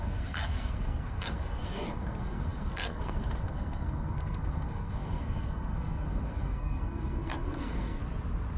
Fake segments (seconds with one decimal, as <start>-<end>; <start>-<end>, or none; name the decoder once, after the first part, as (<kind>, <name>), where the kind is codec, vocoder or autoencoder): 0.0-8.0 (codec, SNAC)